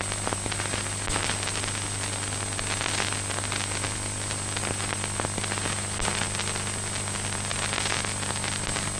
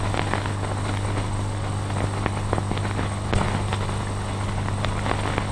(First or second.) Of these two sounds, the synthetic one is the second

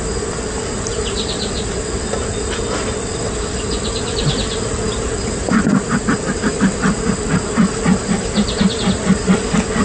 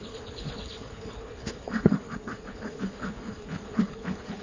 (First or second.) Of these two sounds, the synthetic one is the second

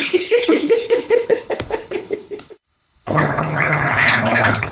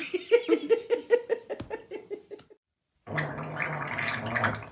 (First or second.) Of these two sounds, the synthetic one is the first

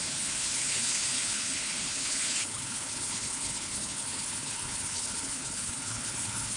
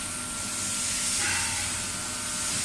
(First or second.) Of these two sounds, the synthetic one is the first